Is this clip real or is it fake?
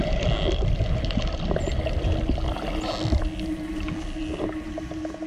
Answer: real